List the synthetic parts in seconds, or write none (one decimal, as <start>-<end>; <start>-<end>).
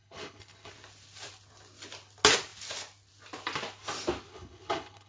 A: 0.0-0.7; 4.3-5.1